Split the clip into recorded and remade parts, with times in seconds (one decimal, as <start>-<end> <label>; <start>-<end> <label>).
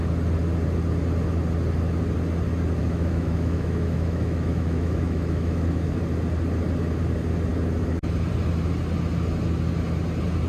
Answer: 0.0-2.8 recorded; 2.8-6.0 remade; 6.0-10.5 recorded